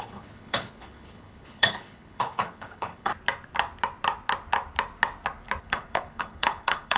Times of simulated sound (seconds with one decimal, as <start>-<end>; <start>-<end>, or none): 0.0-3.1; 5.6-7.0